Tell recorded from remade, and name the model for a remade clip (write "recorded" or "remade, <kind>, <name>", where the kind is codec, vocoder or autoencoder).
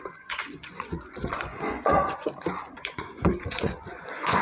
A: remade, vocoder, Vocos